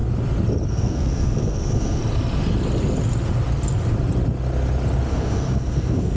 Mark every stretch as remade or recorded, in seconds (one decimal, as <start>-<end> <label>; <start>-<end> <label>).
0.0-0.7 recorded; 0.7-2.0 remade; 2.0-5.1 recorded; 5.1-6.2 remade